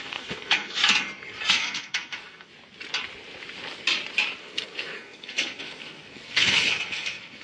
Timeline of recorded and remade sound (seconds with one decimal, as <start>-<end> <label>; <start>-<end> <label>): 0.0-0.8 remade; 0.8-1.5 recorded; 1.5-2.5 remade; 2.5-4.4 recorded; 4.4-7.4 remade